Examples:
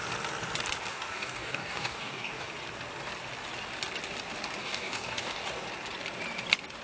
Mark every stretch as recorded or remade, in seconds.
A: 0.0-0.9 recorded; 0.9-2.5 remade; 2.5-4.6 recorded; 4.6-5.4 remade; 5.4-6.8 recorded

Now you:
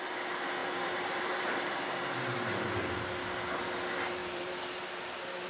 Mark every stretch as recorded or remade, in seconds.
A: 0.0-0.6 recorded; 0.6-2.4 remade; 2.4-4.2 recorded; 4.2-5.5 remade

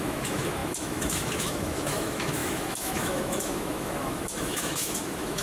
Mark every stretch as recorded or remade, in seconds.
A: 0.0-5.4 remade

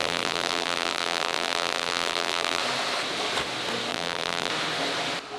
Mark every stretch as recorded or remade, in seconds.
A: 0.0-2.6 remade; 2.6-3.9 recorded; 3.9-4.5 remade; 4.5-5.4 recorded

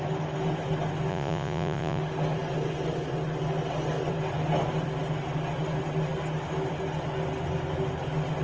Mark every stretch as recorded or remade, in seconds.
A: 0.0-1.1 recorded; 1.1-2.0 remade; 2.0-8.4 recorded